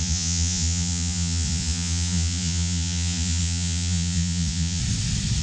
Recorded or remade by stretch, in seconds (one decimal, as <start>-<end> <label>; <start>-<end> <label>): 0.0-4.8 remade; 4.8-5.4 recorded